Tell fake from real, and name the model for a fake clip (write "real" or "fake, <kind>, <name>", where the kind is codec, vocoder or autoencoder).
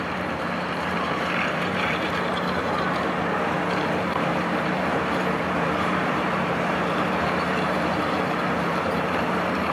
fake, vocoder, BigVGAN v2